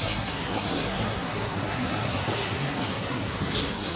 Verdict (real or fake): fake